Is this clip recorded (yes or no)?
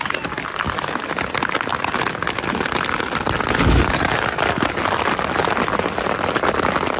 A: yes